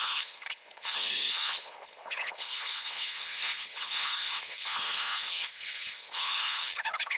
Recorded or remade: remade